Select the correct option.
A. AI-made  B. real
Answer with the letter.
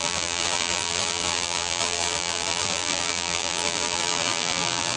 A